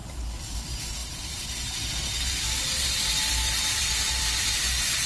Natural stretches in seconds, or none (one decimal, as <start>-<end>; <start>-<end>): 0.0-1.0; 4.1-5.1